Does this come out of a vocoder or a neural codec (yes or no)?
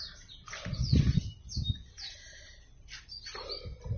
no